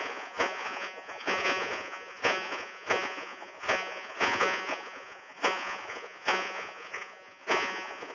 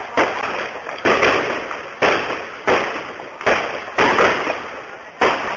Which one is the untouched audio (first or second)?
second